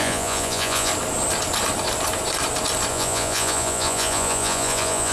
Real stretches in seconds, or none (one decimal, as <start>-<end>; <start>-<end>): 0.9-2.9